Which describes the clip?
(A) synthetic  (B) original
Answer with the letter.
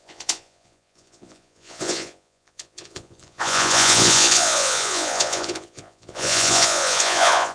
A